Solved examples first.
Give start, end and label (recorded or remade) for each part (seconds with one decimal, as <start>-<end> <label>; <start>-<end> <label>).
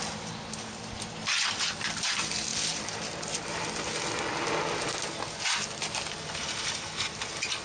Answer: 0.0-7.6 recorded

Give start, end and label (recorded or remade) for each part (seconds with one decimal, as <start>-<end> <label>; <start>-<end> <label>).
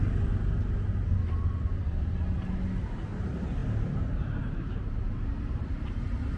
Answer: 0.0-6.4 recorded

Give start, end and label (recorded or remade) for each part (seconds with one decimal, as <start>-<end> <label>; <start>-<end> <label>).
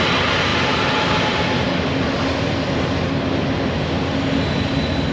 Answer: 0.0-5.1 recorded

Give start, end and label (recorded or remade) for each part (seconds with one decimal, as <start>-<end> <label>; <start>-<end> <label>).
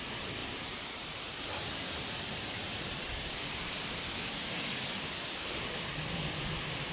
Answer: 0.0-0.4 recorded; 0.4-3.3 remade; 3.3-6.9 recorded